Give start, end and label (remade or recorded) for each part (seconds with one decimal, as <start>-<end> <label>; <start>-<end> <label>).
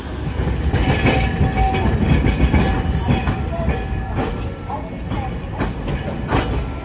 0.0-6.8 recorded